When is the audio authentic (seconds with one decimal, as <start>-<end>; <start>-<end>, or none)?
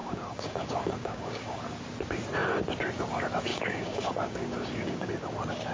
1.6-3.5; 5.1-5.7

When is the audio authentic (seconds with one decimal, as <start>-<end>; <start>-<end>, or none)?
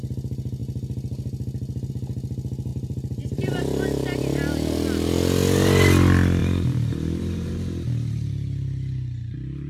0.0-2.7; 4.2-6.4; 8.2-9.7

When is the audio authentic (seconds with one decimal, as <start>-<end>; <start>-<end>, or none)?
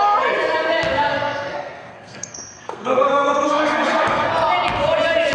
0.0-1.1; 4.3-5.3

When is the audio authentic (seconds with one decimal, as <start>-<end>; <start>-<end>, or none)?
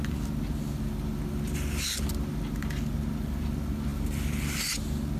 0.0-5.2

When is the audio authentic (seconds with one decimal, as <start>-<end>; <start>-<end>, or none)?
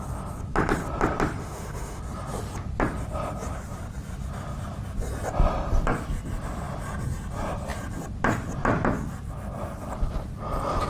0.0-1.4; 2.0-10.9